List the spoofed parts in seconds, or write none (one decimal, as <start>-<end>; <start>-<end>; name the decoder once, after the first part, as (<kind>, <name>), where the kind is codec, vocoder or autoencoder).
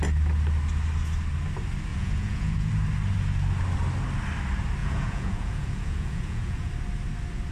1.9-2.7 (vocoder, Vocos); 4.8-6.7